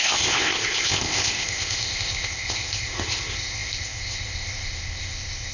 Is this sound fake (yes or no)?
yes